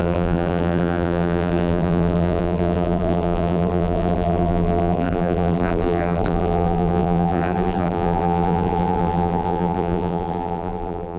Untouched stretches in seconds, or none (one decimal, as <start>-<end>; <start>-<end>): none